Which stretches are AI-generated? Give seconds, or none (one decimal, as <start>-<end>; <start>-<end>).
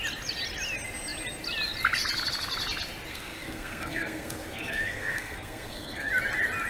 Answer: 3.1-6.1